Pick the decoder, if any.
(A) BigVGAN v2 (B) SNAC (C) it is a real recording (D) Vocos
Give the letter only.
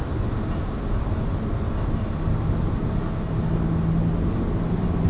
C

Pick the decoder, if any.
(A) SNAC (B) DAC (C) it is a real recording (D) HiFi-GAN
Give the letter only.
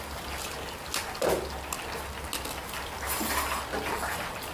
C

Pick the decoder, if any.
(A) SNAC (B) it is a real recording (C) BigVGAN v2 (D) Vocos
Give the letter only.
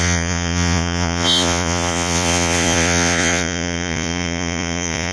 D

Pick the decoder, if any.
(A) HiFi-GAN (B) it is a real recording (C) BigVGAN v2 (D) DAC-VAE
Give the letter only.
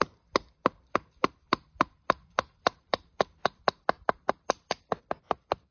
B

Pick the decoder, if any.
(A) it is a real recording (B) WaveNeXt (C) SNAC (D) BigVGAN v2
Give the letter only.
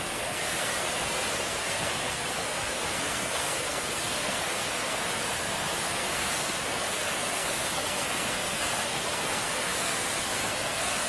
C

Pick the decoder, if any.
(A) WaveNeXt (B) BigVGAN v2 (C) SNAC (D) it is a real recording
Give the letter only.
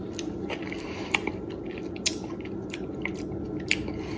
D